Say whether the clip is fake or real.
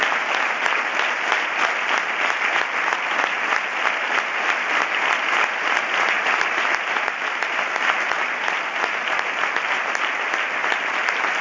real